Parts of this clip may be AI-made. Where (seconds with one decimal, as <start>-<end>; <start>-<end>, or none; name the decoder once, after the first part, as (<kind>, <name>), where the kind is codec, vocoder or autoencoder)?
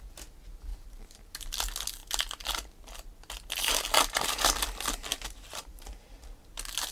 0.7-1.3 (vocoder, BigVGAN v2); 5.1-6.4